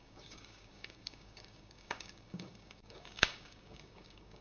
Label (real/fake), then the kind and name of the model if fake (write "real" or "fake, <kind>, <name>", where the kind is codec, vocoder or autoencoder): fake, codec, DAC